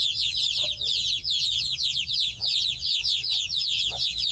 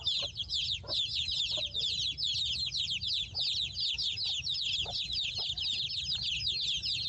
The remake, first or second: first